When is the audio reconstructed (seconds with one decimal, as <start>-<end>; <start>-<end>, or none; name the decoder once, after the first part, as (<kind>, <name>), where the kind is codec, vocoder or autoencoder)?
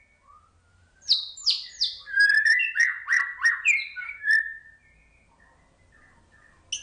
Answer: 0.7-4.2 (vocoder, BigVGAN v2)